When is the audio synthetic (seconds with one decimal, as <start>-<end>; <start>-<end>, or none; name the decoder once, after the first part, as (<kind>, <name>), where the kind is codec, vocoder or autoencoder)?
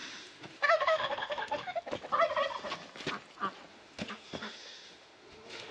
0.0-1.8 (autoencoder, DAC-VAE); 3.7-5.7